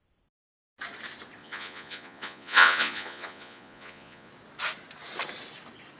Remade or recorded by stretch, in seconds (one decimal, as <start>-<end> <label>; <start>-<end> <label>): 0.0-1.4 recorded; 1.4-4.3 remade; 4.3-6.0 recorded